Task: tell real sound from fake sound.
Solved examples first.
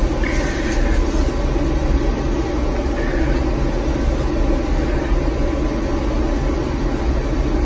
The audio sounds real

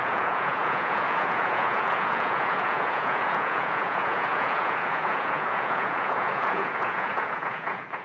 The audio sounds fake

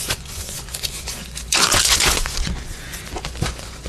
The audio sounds fake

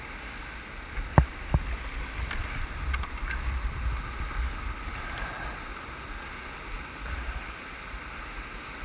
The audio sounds real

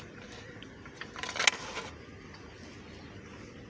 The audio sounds real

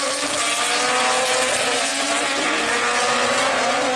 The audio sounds real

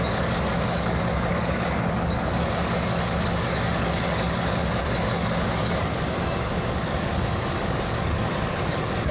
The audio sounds fake